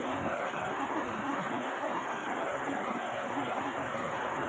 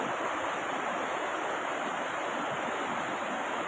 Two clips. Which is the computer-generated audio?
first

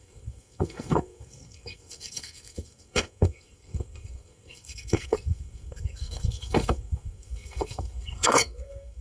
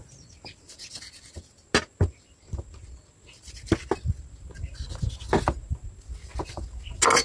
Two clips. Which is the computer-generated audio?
first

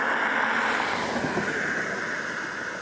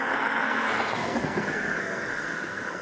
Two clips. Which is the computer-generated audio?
second